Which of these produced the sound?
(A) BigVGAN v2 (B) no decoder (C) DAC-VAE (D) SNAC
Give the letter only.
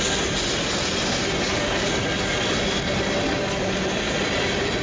B